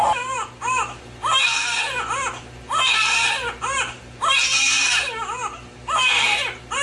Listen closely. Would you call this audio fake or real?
real